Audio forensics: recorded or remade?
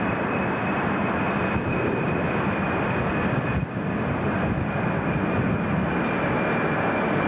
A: recorded